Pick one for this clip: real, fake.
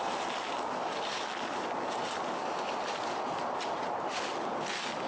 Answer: real